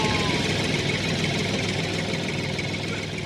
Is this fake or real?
real